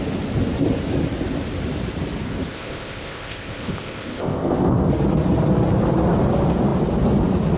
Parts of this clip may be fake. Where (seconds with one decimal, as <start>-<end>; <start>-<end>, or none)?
2.5-4.9